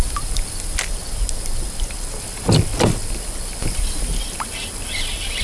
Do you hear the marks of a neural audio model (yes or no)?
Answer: no